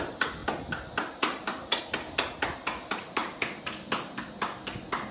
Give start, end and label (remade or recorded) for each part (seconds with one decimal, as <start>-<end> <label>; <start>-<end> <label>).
0.0-5.1 recorded